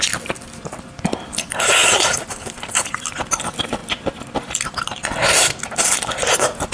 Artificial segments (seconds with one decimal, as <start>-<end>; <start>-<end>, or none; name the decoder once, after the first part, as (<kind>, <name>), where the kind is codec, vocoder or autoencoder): 0.0-3.8 (vocoder, BigVGAN v2)